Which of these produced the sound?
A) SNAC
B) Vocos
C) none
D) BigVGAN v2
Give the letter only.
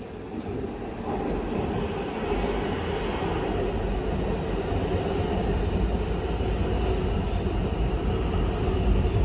C